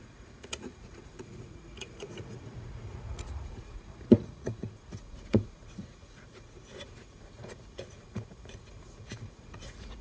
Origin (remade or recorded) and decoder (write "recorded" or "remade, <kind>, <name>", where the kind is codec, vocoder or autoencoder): remade, vocoder, Vocos